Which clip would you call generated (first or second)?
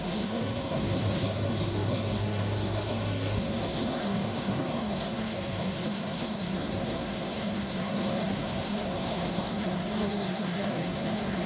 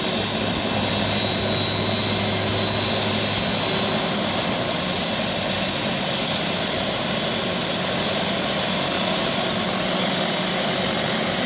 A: first